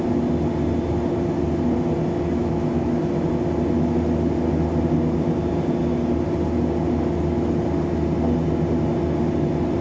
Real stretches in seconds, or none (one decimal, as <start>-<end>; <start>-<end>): 0.0-2.4; 3.0-9.8